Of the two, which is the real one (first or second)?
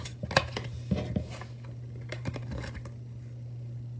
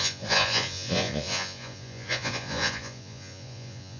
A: first